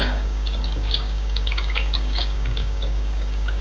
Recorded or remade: remade